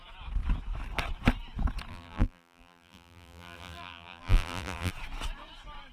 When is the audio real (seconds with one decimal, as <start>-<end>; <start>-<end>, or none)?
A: 0.0-1.9; 4.9-5.9